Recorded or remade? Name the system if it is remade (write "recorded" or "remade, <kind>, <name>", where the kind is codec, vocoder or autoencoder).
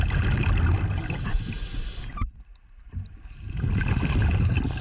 recorded